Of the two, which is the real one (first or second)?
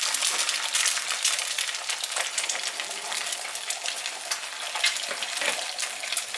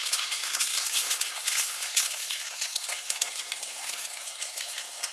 first